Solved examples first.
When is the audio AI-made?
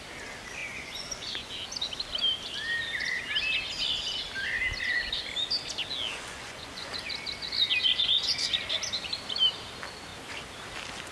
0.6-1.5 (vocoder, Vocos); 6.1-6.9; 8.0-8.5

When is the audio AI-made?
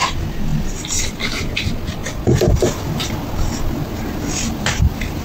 0.5-1.0 (vocoder, BigVGAN v2); 2.0-3.3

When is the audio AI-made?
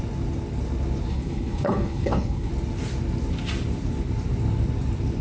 1.1-2.5 (codec, HILCodec)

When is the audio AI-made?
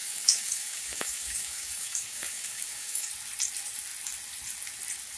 0.0-3.1 (codec, DAC)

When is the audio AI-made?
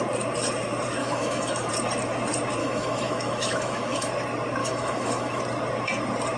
1.0-1.7 (autoencoder, DAC-VAE); 2.6-4.1; 4.6-5.4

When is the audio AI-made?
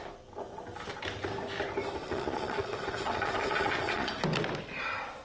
2.0-4.1 (vocoder, Vocos)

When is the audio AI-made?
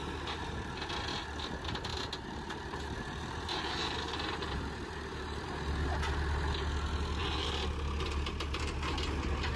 0.0-0.9 (vocoder, BigVGAN v2); 1.9-5.5